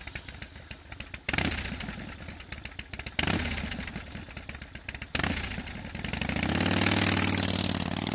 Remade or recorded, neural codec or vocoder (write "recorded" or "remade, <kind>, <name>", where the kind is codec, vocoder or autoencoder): recorded